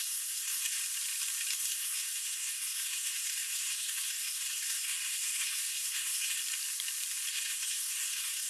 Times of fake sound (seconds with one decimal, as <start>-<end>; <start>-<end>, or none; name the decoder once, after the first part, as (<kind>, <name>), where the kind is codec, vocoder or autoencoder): 0.0-0.8 (codec, SNAC); 1.5-6.4; 7.3-8.5